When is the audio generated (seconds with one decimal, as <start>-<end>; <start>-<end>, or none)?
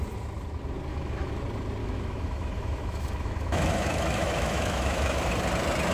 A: 0.9-1.4; 1.8-5.3